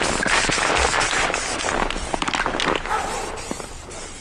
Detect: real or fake real